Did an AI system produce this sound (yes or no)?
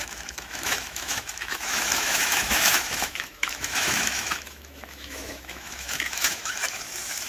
yes